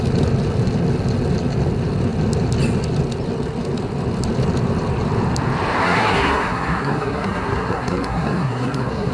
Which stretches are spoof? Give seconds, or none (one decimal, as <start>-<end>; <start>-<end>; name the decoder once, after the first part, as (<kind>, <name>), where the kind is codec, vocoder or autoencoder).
5.8-9.1 (codec, SNAC)